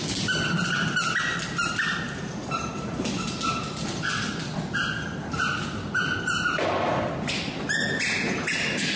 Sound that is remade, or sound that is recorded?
recorded